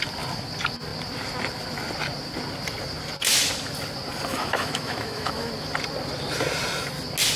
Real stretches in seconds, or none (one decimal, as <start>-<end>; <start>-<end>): 0.0-4.3; 5.5-7.4